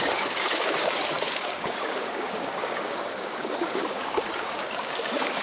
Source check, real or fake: fake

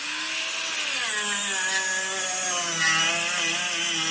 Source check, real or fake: real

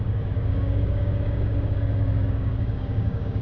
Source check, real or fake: fake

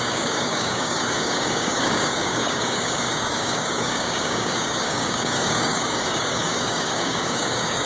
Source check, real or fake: fake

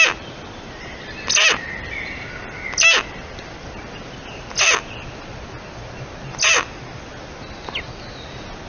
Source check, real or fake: real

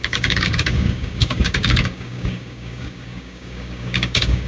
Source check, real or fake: fake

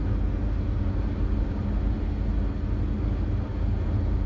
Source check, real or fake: real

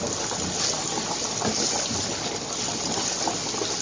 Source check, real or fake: real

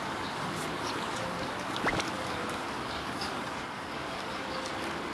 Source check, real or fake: fake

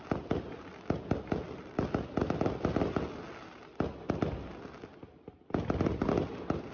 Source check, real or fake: real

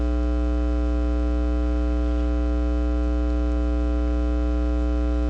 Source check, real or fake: real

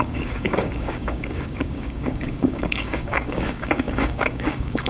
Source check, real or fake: fake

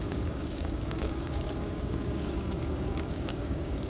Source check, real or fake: fake